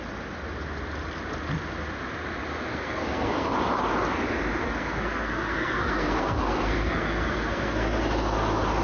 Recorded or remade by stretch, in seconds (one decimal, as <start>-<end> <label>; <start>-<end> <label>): 0.0-2.7 recorded; 2.7-3.5 remade; 3.5-4.6 recorded; 4.6-8.0 remade; 8.0-8.8 recorded